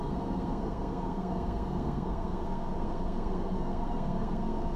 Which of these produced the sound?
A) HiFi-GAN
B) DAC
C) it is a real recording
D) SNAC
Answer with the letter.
D